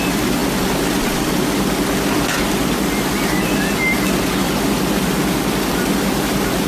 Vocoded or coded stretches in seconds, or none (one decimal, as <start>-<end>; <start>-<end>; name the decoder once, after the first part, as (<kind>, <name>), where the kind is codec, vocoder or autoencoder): none